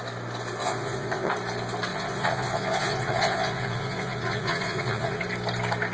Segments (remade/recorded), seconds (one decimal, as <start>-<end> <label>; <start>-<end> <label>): 0.0-0.6 recorded; 0.6-1.3 remade; 1.3-1.9 recorded; 1.9-5.2 remade; 5.2-5.9 recorded